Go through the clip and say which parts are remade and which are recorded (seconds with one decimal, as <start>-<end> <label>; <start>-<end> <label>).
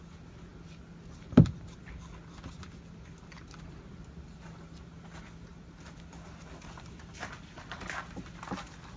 0.0-9.0 recorded